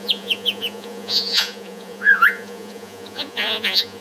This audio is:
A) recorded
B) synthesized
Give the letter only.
B